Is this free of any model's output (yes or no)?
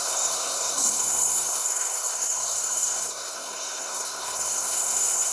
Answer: no